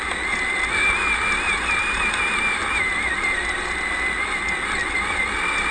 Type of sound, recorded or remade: recorded